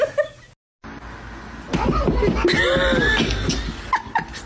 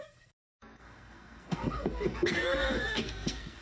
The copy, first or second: second